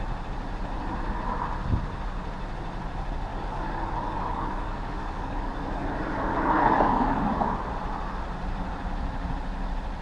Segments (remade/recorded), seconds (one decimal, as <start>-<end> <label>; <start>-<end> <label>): 0.0-3.3 recorded; 3.3-7.7 remade; 7.7-10.0 recorded